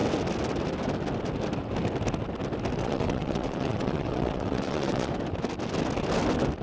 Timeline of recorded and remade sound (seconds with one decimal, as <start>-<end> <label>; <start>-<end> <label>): 0.0-2.8 recorded; 2.8-5.1 remade; 5.1-6.6 recorded